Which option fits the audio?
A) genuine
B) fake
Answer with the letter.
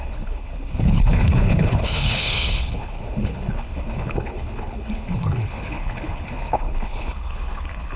B